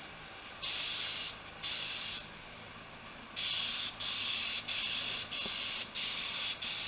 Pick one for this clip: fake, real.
real